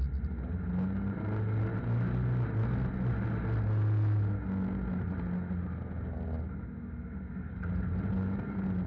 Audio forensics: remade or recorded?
recorded